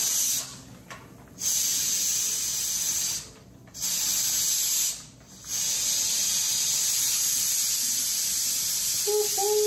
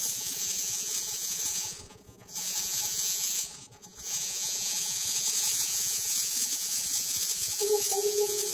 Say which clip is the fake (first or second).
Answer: second